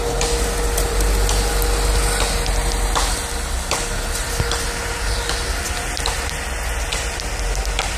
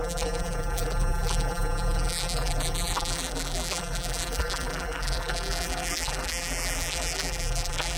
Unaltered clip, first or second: first